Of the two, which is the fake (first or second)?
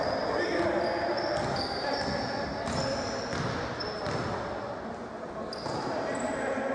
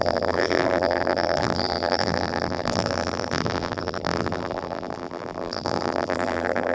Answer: second